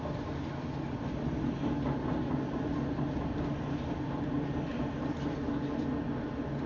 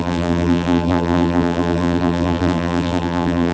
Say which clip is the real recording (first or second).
first